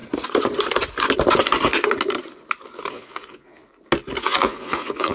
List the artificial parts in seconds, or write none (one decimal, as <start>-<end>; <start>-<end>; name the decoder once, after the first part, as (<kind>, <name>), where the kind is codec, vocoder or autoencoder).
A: 2.9-3.6 (vocoder, Vocos); 4.2-5.1